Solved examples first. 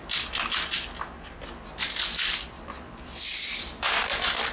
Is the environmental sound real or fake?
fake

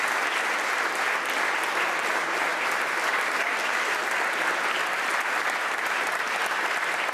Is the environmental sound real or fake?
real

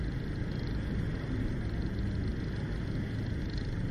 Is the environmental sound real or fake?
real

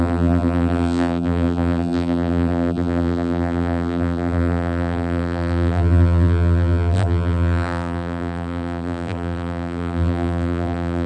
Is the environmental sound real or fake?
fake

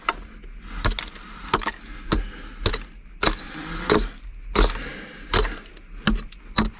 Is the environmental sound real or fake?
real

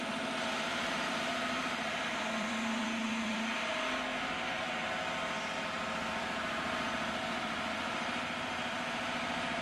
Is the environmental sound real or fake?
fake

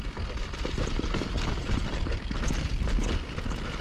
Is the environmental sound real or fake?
real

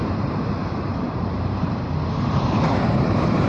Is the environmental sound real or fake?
fake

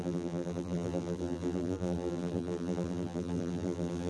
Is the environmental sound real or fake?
fake